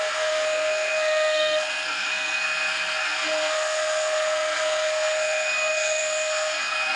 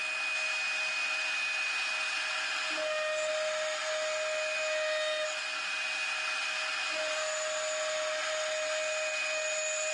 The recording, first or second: second